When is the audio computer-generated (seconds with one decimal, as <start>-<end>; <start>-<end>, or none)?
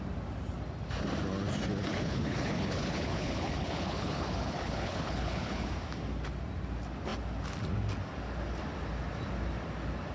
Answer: 1.9-5.7